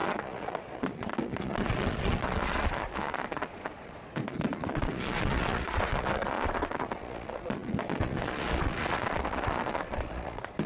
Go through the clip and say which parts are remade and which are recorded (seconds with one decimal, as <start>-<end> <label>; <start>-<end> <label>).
0.0-10.7 remade